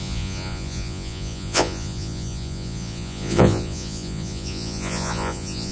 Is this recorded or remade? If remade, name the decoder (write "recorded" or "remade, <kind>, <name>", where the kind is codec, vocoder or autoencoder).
remade, vocoder, Vocos